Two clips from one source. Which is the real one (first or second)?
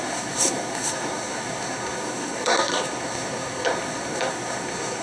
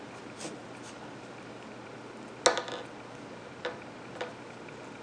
second